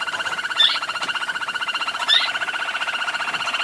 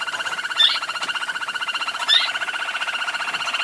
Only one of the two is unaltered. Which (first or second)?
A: second